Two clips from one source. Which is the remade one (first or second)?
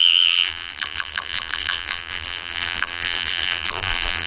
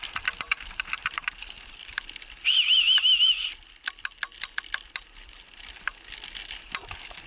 first